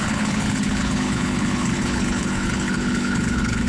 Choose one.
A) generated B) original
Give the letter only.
A